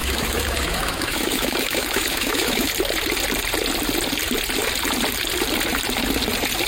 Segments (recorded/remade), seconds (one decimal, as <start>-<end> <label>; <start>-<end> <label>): 0.0-2.7 remade; 2.7-6.7 recorded